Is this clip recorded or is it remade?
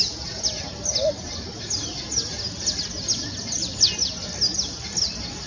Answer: recorded